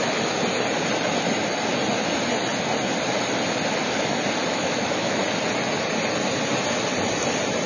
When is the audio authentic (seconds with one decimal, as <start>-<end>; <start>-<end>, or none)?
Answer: 0.0-4.5; 5.2-7.7